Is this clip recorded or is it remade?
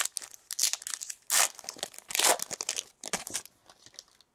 recorded